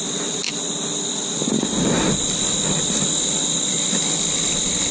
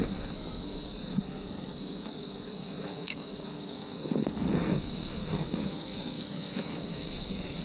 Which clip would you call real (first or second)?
first